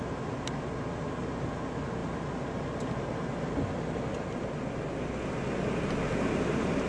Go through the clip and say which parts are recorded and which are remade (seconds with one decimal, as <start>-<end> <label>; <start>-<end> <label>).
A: 0.0-6.9 recorded